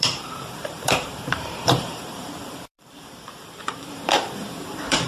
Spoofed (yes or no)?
yes